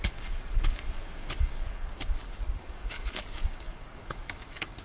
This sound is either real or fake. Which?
fake